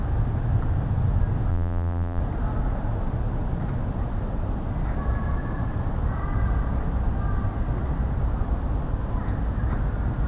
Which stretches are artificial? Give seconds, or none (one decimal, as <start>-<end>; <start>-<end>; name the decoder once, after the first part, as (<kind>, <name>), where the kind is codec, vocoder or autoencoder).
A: 1.5-2.2 (vocoder, BigVGAN v2)